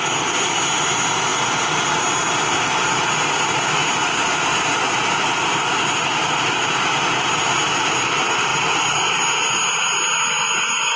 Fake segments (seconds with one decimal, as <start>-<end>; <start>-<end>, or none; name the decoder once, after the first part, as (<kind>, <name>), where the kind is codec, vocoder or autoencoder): none